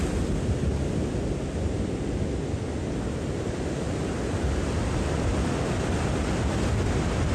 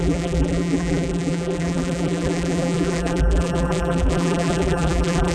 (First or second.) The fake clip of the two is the second